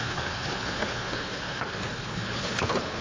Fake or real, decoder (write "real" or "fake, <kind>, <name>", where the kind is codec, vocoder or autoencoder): fake, codec, HILCodec